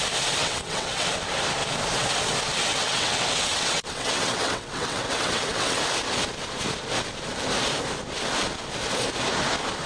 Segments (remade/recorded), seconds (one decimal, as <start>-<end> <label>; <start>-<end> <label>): 0.0-0.4 recorded; 0.4-1.1 remade; 1.1-2.7 recorded; 2.7-5.8 remade; 5.8-9.9 recorded

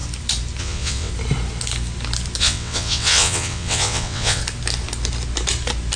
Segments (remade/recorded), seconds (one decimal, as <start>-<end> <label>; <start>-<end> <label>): 0.0-0.6 recorded; 0.6-1.1 remade; 1.1-2.4 recorded; 2.4-4.4 remade; 4.4-6.0 recorded